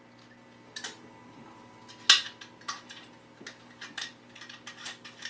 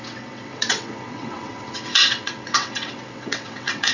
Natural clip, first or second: first